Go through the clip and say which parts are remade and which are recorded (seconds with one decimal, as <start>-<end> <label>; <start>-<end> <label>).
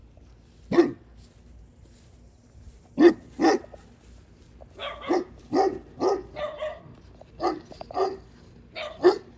0.0-9.4 recorded